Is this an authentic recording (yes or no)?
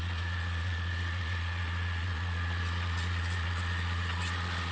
no